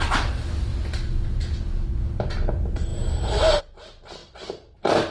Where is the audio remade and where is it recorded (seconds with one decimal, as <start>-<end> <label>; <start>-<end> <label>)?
0.0-0.7 recorded; 0.7-1.4 remade; 1.4-4.2 recorded; 4.2-5.1 remade